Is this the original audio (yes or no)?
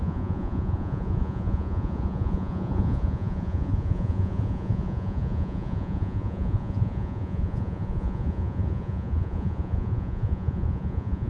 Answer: no